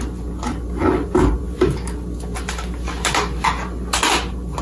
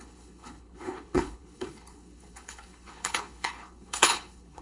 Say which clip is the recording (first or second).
first